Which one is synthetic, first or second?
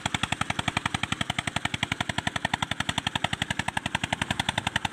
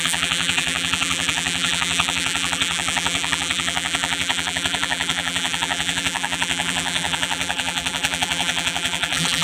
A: second